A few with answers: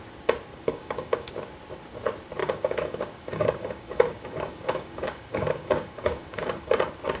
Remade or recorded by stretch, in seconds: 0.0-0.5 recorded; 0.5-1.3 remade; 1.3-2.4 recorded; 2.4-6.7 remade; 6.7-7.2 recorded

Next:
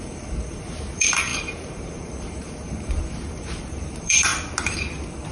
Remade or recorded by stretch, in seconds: 0.0-4.3 remade; 4.3-5.3 recorded

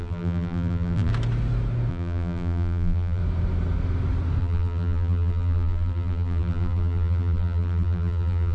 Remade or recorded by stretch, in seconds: 0.0-1.1 remade; 1.1-1.9 recorded; 1.9-3.2 remade; 3.2-4.4 recorded; 4.4-8.5 remade

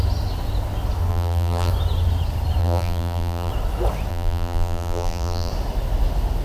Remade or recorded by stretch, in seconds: 0.0-1.1 recorded; 1.1-1.7 remade; 1.7-2.6 recorded; 2.6-3.5 remade; 3.5-4.1 recorded; 4.1-5.5 remade; 5.5-6.4 recorded

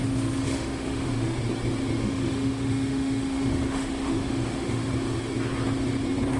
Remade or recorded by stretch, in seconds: 0.0-1.4 remade; 1.4-2.0 recorded; 2.0-4.8 remade; 4.8-6.4 recorded